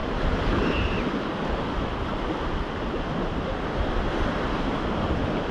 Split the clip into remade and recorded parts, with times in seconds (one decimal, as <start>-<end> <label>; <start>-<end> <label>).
0.0-5.5 recorded